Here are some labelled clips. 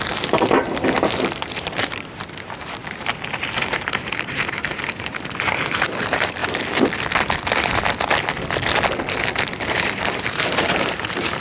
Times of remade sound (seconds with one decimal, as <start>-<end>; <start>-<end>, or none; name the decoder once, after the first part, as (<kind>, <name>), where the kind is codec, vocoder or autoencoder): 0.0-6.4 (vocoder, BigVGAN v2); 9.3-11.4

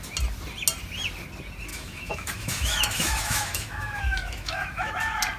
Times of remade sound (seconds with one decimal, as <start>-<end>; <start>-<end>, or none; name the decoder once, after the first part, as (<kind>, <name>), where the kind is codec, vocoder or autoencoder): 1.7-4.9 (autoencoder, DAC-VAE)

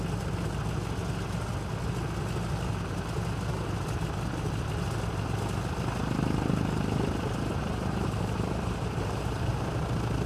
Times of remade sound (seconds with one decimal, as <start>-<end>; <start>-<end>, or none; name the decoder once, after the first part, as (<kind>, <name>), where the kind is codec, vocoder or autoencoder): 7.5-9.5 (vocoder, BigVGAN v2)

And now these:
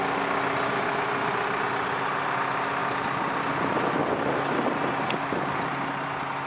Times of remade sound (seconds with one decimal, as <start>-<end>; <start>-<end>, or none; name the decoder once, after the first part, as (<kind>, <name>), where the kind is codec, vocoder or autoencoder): none